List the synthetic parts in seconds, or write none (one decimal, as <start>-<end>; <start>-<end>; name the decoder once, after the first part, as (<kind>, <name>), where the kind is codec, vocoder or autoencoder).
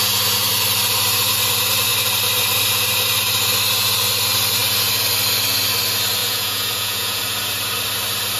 6.2-7.2 (vocoder, Vocos)